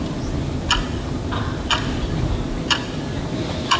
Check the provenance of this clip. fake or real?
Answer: real